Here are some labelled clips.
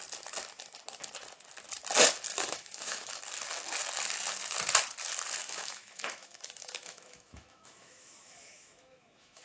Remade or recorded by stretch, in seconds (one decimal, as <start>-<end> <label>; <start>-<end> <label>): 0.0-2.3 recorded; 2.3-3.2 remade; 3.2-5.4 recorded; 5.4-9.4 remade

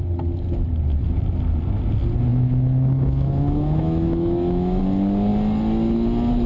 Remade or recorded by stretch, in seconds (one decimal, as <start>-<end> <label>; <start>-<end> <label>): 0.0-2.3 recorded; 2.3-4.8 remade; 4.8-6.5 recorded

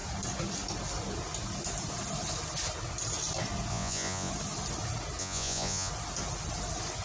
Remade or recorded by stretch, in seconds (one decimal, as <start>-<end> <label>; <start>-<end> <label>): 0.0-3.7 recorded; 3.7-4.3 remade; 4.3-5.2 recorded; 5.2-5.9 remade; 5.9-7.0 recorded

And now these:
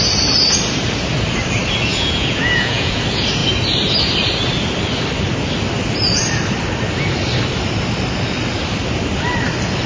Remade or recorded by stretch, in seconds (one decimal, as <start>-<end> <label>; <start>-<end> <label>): 0.0-1.9 recorded; 1.9-3.0 remade; 3.0-9.9 recorded

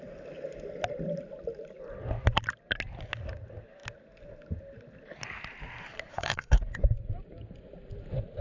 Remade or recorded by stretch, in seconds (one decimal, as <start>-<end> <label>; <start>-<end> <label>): 0.0-6.1 recorded; 6.1-6.6 remade; 6.6-8.4 recorded